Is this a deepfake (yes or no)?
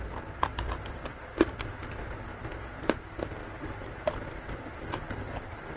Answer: no